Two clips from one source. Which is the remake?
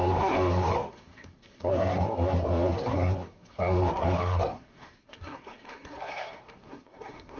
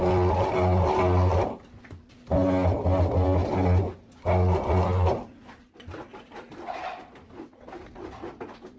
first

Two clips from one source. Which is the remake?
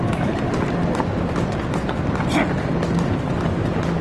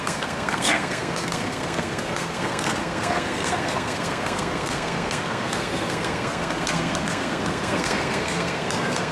second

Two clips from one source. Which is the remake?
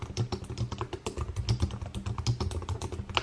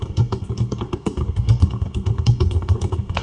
second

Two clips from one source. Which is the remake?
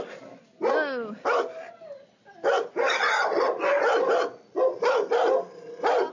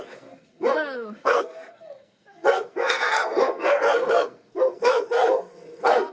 second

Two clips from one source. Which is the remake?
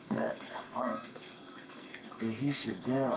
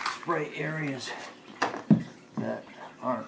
first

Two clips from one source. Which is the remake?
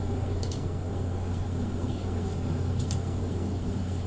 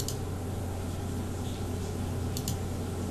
first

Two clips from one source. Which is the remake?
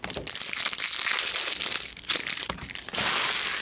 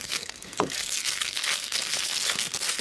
second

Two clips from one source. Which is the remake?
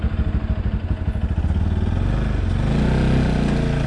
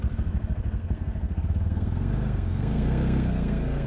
second